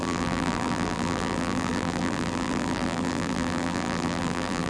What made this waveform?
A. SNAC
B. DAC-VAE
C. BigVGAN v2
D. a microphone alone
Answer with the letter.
C